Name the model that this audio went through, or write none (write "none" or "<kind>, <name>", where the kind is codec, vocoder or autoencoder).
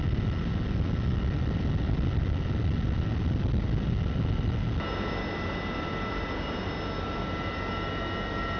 none